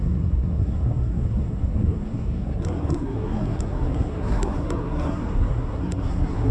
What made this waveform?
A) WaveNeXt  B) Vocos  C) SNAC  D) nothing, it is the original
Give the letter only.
C